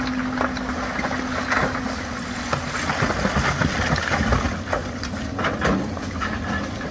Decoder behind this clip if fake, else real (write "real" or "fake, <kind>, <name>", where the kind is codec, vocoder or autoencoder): real